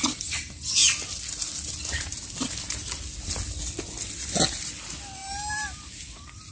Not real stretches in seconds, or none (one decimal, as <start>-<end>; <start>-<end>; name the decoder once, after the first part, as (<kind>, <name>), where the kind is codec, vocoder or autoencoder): none

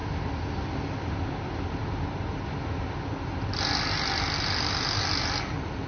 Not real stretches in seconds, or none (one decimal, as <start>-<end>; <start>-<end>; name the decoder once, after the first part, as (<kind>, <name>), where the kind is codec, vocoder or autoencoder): none

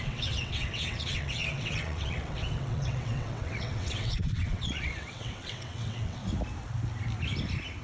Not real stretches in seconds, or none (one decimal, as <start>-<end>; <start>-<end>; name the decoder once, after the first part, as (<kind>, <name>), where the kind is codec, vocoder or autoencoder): 0.0-6.2 (vocoder, WaveNeXt)

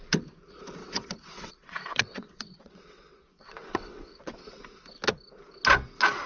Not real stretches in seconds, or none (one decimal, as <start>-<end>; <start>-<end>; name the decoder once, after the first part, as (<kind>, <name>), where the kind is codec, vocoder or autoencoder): 0.8-4.6 (vocoder, WaveNeXt)

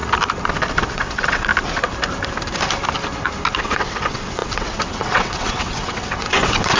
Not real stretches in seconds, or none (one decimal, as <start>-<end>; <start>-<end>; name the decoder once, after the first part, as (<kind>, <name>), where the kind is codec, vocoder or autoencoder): 0.9-1.5 (vocoder, WaveNeXt); 3.6-6.8

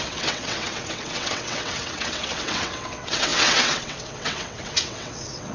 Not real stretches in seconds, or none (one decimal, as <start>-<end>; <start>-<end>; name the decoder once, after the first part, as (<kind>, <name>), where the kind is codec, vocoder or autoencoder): 0.0-5.5 (vocoder, WaveNeXt)

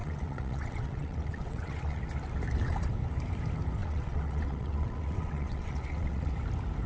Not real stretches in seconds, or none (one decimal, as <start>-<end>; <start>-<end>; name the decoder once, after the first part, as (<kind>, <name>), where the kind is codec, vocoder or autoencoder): 0.0-2.0 (vocoder, WaveNeXt); 3.8-6.3